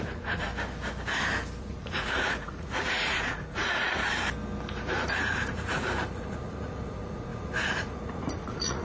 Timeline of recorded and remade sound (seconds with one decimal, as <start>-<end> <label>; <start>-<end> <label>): 0.0-0.5 remade; 0.5-1.6 recorded; 1.6-4.0 remade; 4.0-4.9 recorded; 4.9-8.8 remade